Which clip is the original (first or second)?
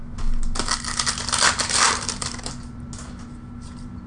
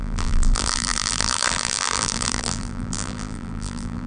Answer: first